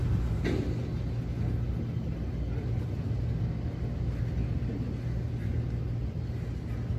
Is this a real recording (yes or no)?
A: yes